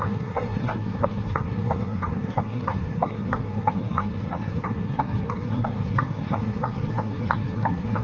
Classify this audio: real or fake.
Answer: fake